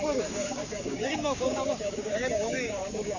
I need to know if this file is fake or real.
fake